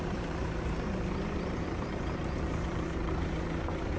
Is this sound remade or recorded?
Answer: remade